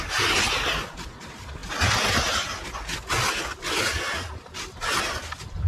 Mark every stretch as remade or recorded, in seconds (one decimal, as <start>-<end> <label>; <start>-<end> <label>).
0.0-5.7 recorded